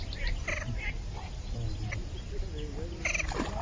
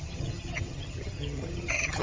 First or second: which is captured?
first